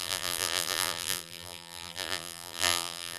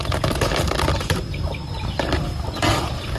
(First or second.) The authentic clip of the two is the second